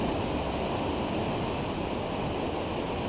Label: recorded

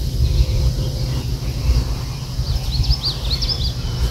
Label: recorded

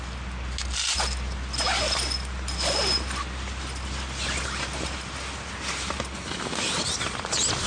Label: recorded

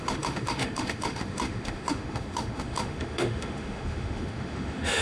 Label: remade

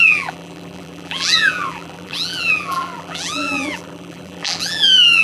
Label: remade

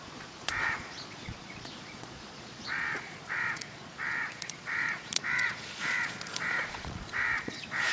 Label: remade